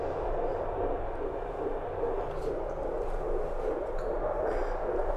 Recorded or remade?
remade